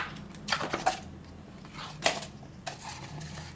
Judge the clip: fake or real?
real